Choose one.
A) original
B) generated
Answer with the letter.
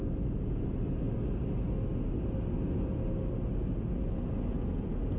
A